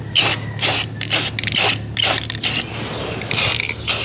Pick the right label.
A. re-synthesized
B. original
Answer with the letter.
B